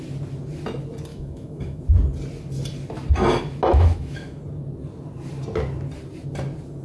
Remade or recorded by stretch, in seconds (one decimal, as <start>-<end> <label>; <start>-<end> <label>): 0.0-1.1 recorded; 1.1-1.8 remade; 1.8-3.7 recorded; 3.7-4.4 remade; 4.4-6.8 recorded

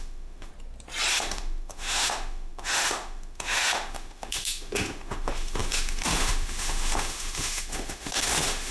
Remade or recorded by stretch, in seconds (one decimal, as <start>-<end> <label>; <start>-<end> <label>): 0.0-0.5 remade; 0.5-1.1 recorded; 1.1-8.7 remade

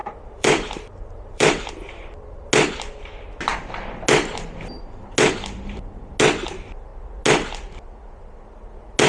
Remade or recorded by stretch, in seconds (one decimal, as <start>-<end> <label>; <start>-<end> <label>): 0.0-1.7 remade; 1.7-9.1 recorded

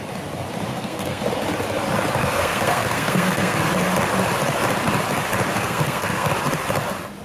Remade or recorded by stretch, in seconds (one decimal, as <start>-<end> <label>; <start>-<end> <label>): 0.0-0.7 recorded; 0.7-1.2 remade; 1.2-2.2 recorded; 2.2-3.6 remade; 3.6-5.6 recorded; 5.6-6.3 remade; 6.3-7.2 recorded